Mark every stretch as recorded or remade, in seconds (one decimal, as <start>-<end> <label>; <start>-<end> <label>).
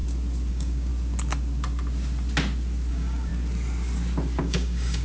0.0-0.5 recorded; 0.5-0.9 remade; 0.9-2.9 recorded; 2.9-3.3 remade; 3.3-4.4 recorded; 4.4-5.0 remade